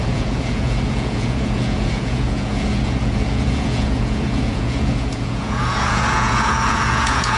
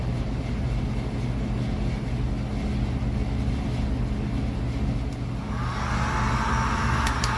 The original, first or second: second